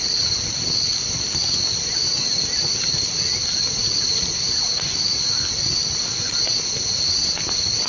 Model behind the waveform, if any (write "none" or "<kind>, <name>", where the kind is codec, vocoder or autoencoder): vocoder, BigVGAN v2